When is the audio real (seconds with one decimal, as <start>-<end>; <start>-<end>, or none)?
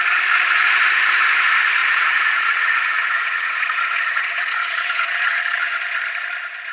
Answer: 0.0-1.8; 5.8-6.7